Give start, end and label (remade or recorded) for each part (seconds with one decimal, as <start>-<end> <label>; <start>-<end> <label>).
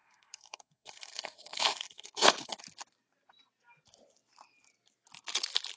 0.0-2.6 remade; 2.6-5.8 recorded